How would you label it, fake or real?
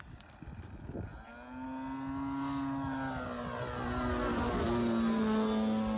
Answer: real